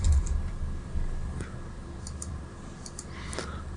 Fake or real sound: fake